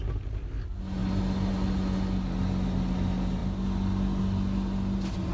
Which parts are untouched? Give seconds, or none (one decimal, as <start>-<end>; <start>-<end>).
0.0-5.3